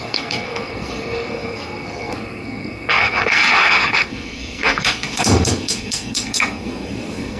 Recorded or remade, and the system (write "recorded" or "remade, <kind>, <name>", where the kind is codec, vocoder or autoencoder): remade, codec, SNAC